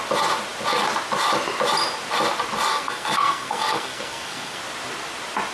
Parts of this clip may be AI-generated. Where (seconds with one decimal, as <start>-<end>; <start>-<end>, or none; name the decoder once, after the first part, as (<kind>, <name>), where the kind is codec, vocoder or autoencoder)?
2.7-4.6 (codec, SNAC)